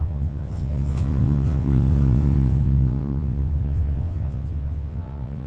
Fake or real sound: fake